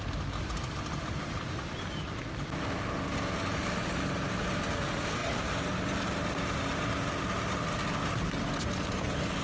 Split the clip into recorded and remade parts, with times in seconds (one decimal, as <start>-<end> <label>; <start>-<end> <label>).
0.0-9.4 recorded